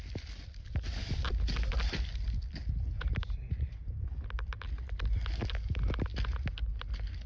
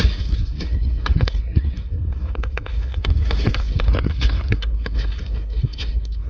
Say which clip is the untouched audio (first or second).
first